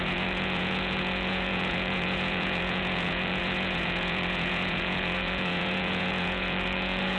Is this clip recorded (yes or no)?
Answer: no